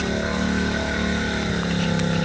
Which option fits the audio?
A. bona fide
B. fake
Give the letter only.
A